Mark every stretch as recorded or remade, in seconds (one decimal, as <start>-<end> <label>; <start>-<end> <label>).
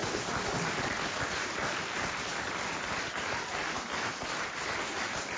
0.0-5.4 recorded